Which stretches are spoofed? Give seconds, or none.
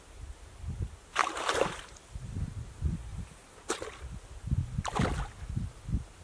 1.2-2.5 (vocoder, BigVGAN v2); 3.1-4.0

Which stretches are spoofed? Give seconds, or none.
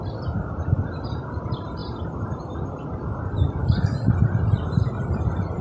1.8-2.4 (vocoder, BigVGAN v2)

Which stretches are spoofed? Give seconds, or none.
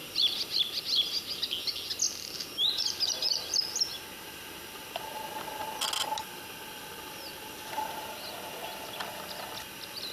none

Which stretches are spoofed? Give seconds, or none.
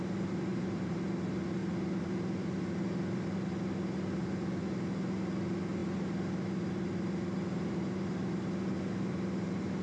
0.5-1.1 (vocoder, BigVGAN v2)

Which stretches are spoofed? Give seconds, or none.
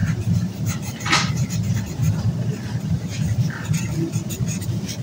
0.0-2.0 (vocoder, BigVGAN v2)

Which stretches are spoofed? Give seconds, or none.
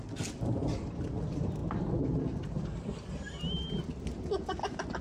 none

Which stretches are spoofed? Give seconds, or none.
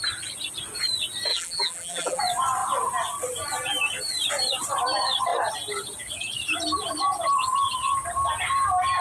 1.3-2.2 (vocoder, BigVGAN v2)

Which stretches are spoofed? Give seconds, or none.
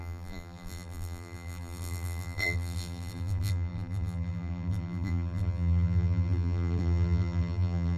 0.0-8.0 (vocoder, BigVGAN v2)